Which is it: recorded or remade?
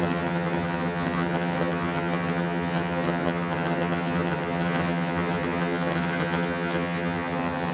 remade